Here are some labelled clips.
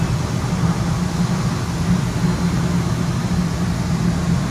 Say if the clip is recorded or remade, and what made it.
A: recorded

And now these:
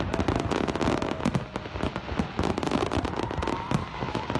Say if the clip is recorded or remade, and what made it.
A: recorded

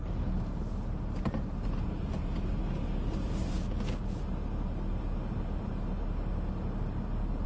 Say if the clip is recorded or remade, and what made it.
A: recorded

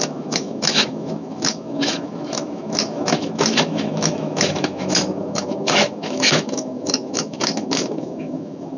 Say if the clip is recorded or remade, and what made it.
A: remade, autoencoder, DAC-VAE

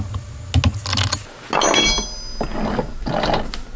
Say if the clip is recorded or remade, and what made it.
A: recorded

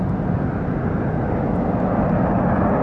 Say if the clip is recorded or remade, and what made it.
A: recorded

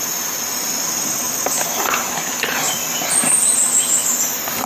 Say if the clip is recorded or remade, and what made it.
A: recorded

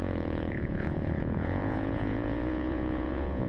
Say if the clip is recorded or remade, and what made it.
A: remade, vocoder, Vocos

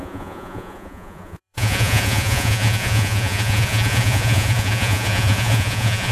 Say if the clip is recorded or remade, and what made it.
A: remade, vocoder, Vocos